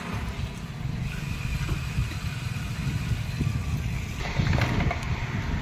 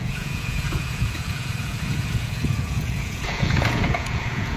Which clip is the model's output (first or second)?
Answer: second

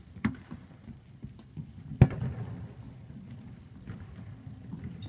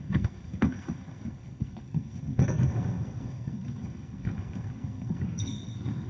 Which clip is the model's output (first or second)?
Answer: second